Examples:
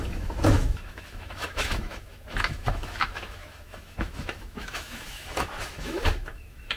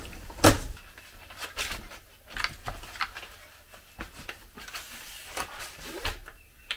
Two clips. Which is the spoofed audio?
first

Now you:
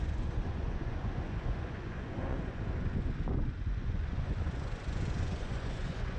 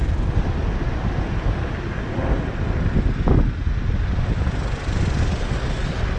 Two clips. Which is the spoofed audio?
first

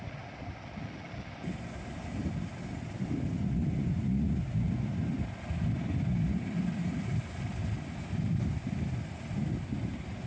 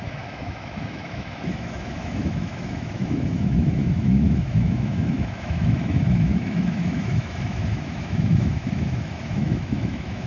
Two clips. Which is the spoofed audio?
second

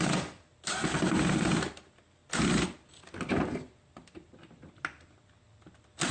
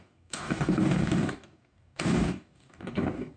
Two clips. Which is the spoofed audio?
second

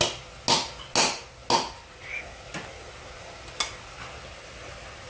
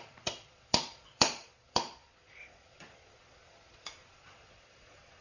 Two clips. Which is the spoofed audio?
second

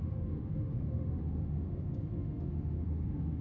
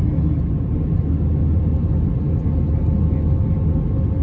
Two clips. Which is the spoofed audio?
first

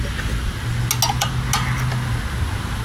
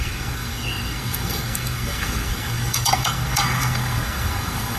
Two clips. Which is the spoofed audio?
second